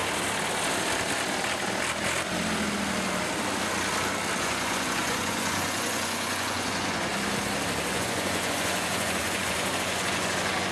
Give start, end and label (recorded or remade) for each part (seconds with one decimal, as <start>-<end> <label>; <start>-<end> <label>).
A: 0.0-4.4 recorded; 4.4-7.1 remade; 7.1-7.9 recorded; 7.9-10.7 remade